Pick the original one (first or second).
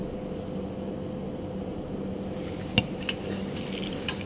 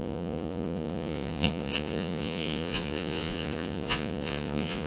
first